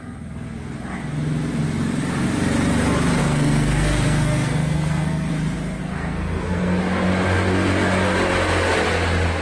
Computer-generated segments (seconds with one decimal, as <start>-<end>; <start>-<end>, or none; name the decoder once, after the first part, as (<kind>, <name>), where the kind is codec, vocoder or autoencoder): 3.2-5.3 (codec, SNAC); 5.8-6.8

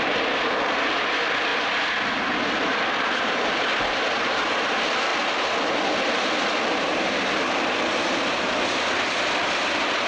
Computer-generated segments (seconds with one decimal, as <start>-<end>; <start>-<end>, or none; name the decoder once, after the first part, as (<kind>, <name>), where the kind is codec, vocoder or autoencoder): 0.0-1.5 (vocoder, BigVGAN v2); 2.5-5.1; 6.6-10.1

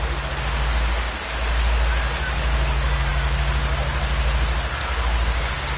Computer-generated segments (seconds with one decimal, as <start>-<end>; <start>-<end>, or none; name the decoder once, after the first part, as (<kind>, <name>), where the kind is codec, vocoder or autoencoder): none